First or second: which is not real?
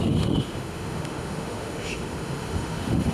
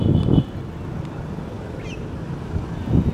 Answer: first